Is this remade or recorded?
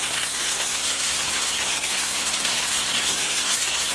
remade